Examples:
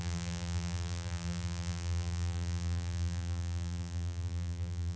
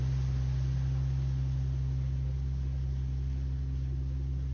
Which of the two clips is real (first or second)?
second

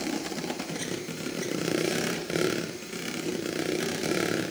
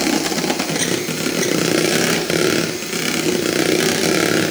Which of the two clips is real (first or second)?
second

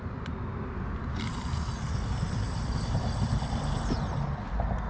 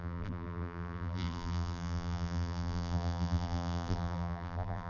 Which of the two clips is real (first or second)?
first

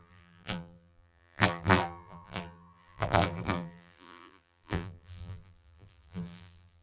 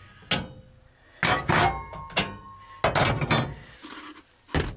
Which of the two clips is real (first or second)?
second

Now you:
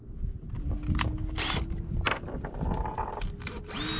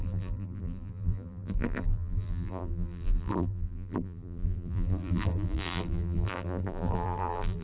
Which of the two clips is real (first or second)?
first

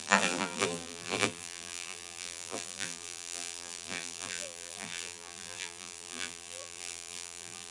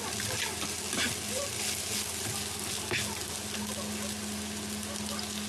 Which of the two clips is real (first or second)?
second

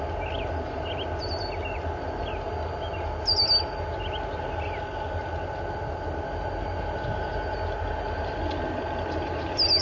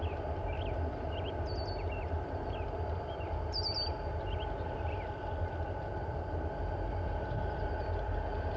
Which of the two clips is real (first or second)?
first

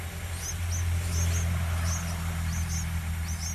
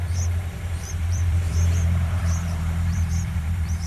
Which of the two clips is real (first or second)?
first